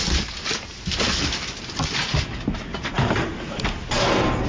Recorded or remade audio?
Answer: recorded